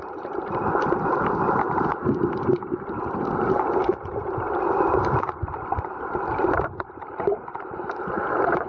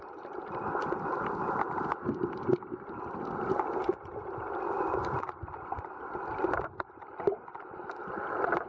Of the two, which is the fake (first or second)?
first